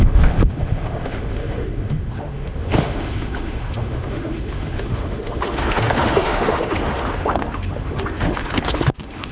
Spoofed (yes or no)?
yes